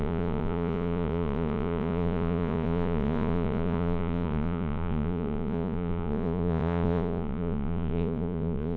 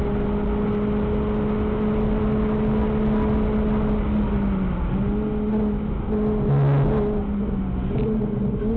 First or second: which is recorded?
second